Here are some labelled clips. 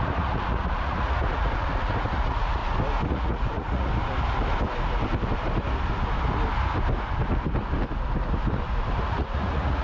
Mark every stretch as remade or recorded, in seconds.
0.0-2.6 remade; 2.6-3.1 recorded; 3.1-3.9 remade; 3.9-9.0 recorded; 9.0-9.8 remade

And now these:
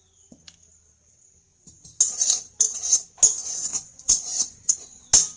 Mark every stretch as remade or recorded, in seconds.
0.0-3.7 recorded; 3.7-5.0 remade; 5.0-5.4 recorded